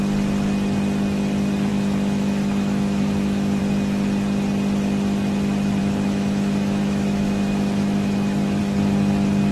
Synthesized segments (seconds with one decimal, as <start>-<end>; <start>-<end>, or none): 1.7-3.6; 5.8-8.6